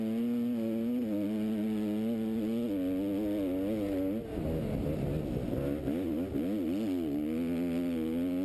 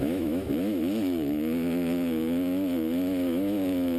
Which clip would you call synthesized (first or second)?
second